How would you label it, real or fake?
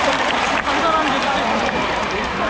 fake